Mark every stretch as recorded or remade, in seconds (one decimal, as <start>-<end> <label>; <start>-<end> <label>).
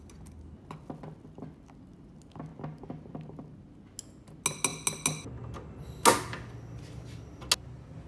0.0-8.1 recorded